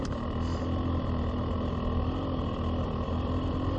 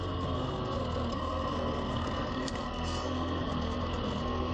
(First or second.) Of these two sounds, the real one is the first